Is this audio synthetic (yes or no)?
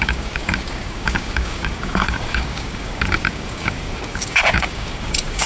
yes